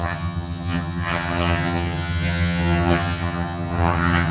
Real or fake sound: fake